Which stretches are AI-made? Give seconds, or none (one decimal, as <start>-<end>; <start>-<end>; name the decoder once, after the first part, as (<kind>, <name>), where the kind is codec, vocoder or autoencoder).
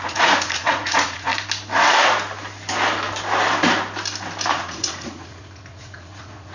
0.0-1.3 (vocoder, Vocos); 4.5-6.5